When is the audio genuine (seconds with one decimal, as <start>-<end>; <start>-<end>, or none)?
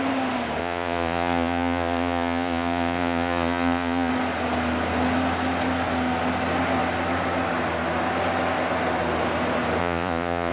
0.0-0.6; 4.1-9.8